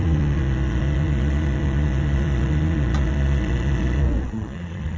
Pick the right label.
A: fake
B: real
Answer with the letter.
A